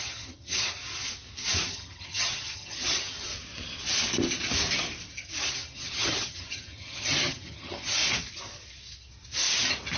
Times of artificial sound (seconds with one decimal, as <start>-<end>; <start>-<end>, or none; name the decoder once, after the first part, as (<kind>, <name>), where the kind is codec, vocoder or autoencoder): 0.0-0.8 (vocoder, HiFi-GAN); 1.7-3.3; 5.5-8.0